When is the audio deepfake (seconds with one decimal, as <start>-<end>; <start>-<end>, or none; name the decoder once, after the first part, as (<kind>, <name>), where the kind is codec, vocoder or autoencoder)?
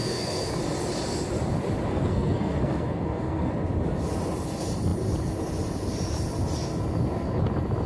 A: 0.0-0.6 (codec, SNAC); 1.9-3.5